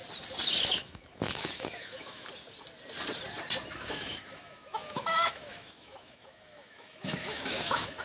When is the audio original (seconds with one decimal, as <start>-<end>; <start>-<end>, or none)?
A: 0.0-0.6; 2.3-3.7